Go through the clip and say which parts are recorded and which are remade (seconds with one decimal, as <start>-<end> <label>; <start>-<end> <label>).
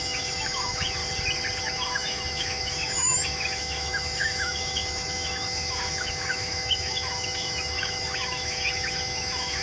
0.0-1.0 remade; 1.0-1.6 recorded; 1.6-9.6 remade